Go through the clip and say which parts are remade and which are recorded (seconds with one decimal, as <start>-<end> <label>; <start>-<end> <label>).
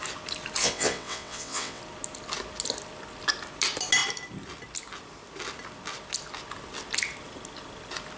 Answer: 0.0-0.6 recorded; 0.6-1.8 remade; 1.8-8.2 recorded